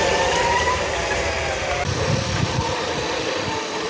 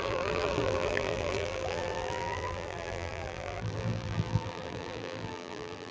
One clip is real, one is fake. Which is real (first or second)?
first